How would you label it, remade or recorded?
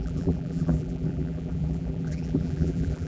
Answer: remade